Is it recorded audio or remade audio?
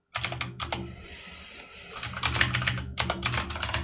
recorded